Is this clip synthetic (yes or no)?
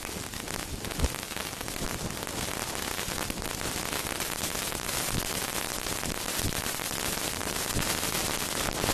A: no